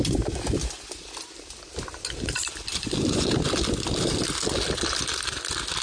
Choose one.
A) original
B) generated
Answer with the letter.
A